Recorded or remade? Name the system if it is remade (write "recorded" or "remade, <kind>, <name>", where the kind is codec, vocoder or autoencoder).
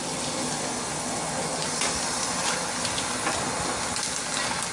recorded